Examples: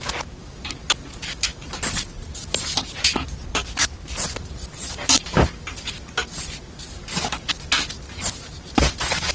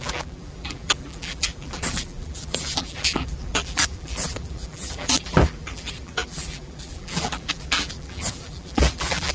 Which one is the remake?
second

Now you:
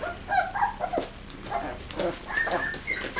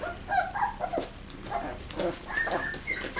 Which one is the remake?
second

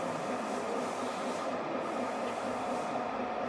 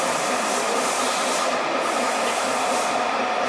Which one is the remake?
second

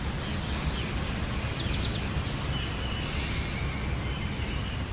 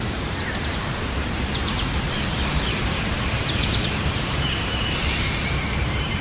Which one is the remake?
second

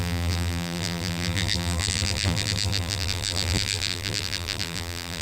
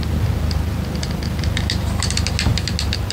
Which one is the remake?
first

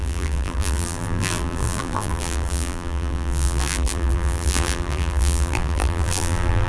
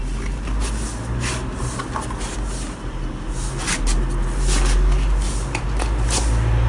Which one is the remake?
first